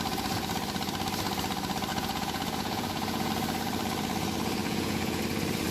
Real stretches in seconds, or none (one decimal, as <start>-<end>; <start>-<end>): 0.0-1.9; 3.3-4.6; 5.2-5.7